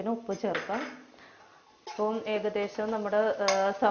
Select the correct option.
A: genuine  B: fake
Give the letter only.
A